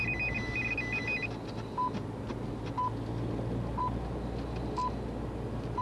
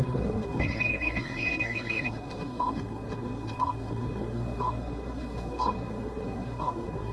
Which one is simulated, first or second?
second